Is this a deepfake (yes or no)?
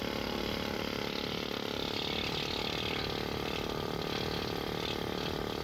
no